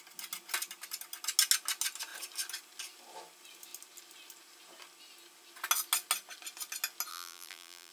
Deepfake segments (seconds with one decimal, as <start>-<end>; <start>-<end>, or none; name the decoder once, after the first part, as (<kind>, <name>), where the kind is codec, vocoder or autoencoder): 7.1-7.9 (vocoder, BigVGAN v2)